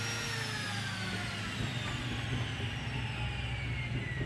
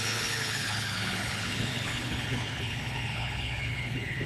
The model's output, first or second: second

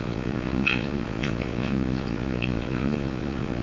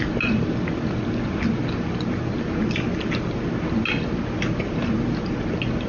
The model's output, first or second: first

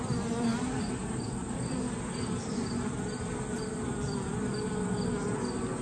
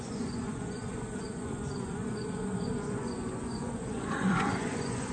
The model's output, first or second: second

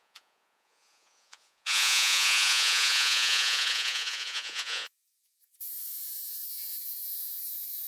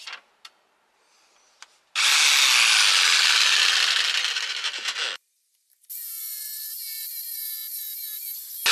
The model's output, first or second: first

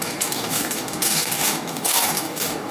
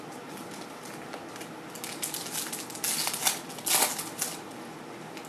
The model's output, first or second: first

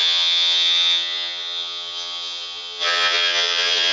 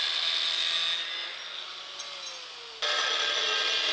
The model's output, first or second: first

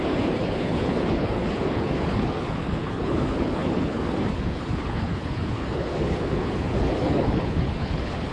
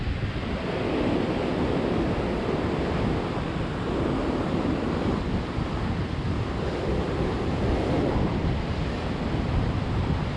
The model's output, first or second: first